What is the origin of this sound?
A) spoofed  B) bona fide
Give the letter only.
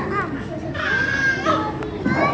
B